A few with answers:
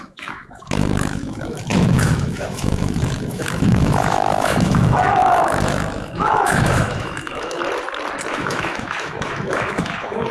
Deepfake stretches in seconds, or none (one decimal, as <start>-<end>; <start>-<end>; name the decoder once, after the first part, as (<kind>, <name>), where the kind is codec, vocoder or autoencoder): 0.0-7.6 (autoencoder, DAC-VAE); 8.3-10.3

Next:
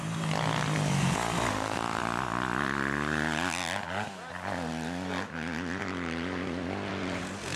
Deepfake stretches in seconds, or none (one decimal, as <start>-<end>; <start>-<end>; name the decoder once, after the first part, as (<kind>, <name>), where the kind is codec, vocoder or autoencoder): 1.5-2.0 (autoencoder, DAC-VAE)

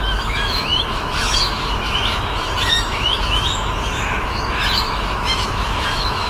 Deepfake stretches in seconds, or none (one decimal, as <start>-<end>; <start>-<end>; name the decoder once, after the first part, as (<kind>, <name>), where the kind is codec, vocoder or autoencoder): 0.0-6.3 (autoencoder, DAC-VAE)

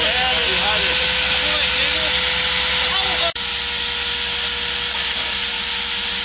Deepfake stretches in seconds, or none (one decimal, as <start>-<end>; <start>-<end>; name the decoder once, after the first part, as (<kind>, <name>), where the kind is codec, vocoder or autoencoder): none